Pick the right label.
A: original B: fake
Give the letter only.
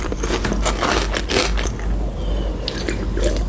A